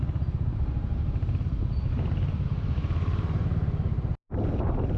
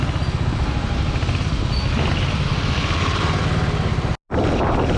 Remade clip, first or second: first